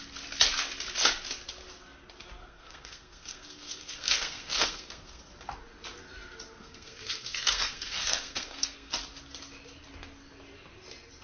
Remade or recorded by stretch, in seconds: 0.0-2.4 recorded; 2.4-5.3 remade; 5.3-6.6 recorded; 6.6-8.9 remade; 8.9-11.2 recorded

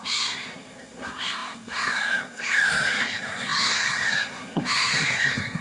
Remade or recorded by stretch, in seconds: 0.0-5.6 remade

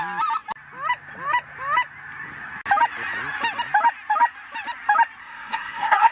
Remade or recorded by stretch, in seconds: 0.0-5.2 recorded; 5.2-6.1 remade

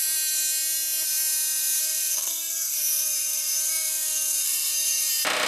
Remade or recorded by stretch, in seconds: 0.0-1.8 recorded; 1.8-5.1 remade; 5.1-5.5 recorded

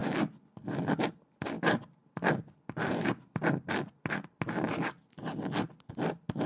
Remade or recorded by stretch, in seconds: 0.0-6.5 recorded

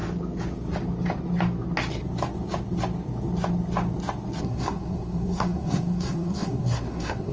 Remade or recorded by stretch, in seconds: 0.0-4.4 recorded; 4.4-7.3 remade